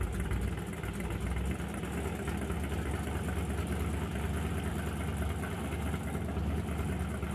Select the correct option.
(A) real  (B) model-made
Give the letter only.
A